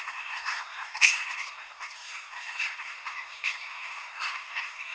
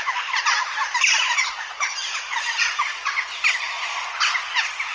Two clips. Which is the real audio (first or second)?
second